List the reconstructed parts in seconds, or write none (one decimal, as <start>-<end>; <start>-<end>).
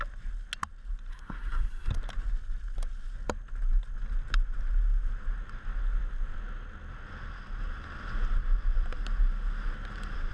1.1-1.9